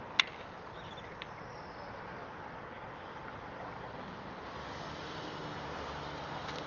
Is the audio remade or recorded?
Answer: recorded